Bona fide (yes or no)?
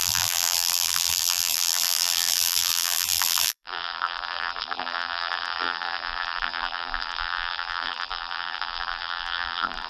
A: no